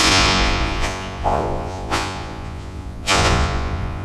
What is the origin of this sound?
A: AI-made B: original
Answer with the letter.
A